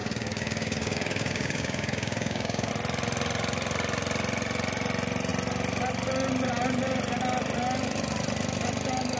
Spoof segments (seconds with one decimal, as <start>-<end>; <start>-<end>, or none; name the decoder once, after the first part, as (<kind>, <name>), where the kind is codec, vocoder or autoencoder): 0.0-2.7 (codec, DAC)